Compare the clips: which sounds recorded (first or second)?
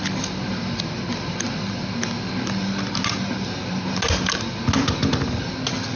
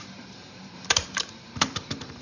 first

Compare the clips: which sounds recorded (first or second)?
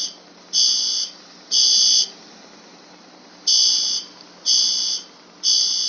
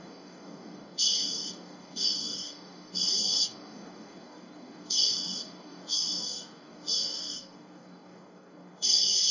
first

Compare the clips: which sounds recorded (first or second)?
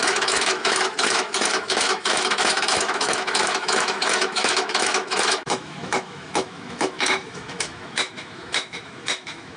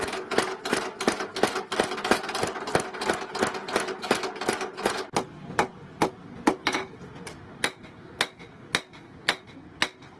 second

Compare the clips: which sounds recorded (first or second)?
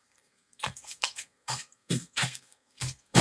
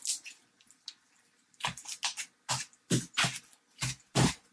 second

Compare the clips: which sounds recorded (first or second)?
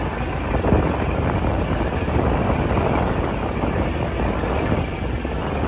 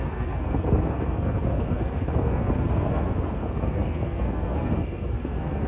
first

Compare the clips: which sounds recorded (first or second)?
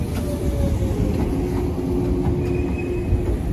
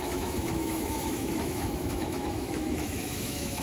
first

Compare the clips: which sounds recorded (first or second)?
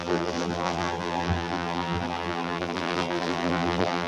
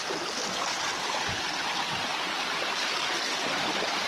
second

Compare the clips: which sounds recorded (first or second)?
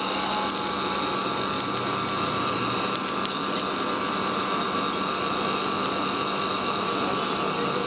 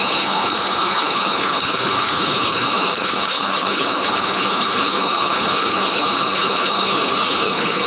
first